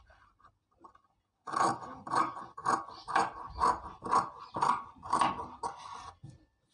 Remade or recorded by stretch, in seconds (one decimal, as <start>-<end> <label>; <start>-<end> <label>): 0.0-6.7 recorded